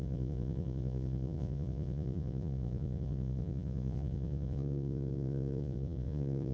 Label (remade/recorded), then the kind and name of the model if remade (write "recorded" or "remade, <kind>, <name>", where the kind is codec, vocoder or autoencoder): remade, vocoder, Vocos